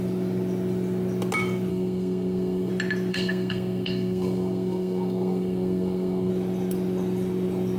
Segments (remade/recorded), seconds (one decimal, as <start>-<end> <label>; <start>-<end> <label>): 0.0-1.7 recorded; 1.7-2.7 remade; 2.7-3.1 recorded; 3.1-6.3 remade; 6.3-7.8 recorded